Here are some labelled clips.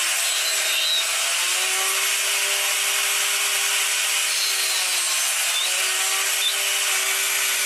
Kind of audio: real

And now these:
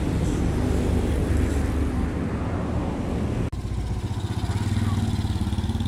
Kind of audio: real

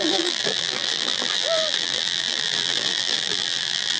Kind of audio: fake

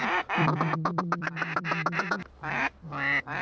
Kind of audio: fake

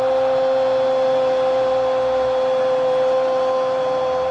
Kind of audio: real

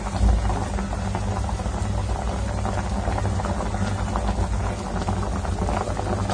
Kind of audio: real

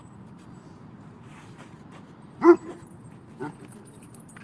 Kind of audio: fake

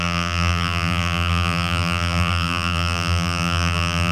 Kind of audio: fake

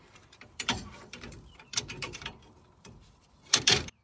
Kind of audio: fake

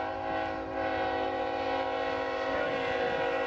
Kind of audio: real